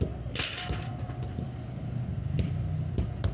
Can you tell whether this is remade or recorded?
recorded